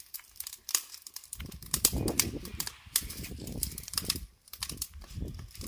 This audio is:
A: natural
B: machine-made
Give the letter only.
B